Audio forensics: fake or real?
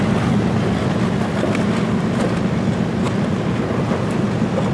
real